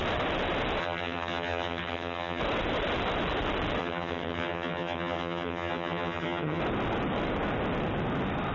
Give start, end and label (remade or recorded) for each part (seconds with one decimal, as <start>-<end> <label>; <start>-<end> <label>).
0.0-0.8 recorded; 0.8-2.4 remade; 2.4-3.8 recorded; 3.8-6.6 remade; 6.6-8.5 recorded